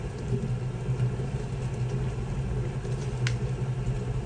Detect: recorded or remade recorded